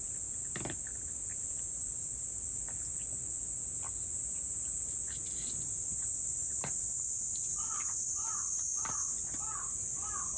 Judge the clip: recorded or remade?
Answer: recorded